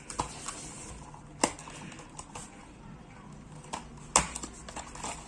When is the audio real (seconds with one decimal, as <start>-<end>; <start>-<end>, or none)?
0.0-5.3